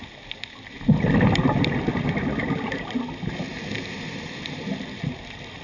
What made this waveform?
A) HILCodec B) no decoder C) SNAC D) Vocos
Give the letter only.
B